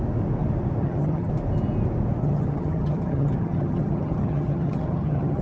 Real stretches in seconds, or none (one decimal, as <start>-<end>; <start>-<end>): 0.0-0.8; 1.3-2.2